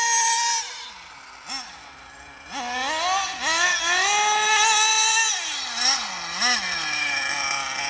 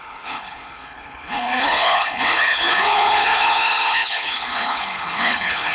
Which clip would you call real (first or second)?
first